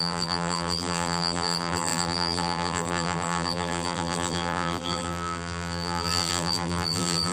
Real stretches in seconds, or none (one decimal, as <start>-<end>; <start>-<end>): none